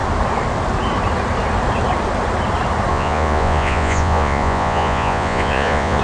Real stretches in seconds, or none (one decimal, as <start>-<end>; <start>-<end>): 0.0-2.9